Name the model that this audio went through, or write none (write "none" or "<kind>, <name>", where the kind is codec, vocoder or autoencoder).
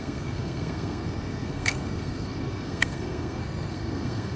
codec, SNAC